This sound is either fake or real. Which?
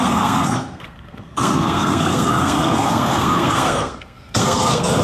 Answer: fake